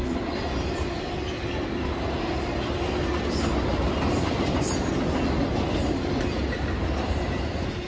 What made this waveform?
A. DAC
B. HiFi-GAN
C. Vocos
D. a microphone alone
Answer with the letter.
D